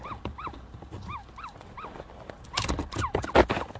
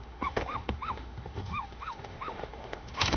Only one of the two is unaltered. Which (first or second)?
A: first